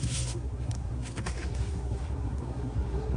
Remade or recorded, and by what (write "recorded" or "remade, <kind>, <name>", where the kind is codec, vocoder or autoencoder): remade, codec, SNAC